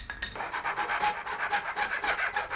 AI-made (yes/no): no